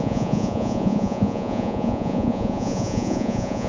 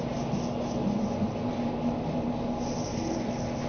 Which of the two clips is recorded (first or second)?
second